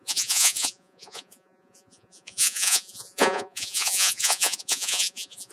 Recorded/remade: remade